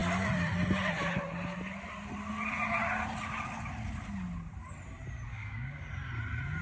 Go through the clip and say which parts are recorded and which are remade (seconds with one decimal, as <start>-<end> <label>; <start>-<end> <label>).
0.0-5.3 recorded; 5.3-5.9 remade; 5.9-6.6 recorded